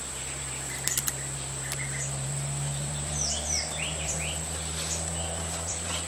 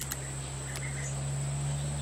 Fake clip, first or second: first